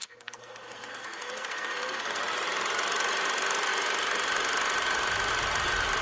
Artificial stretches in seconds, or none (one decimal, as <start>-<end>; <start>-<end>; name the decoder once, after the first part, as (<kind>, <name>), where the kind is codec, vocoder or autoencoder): 0.0-2.2 (codec, SNAC)